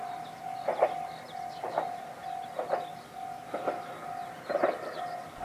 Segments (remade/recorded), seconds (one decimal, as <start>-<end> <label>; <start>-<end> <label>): 0.0-4.2 recorded; 4.2-5.0 remade; 5.0-5.4 recorded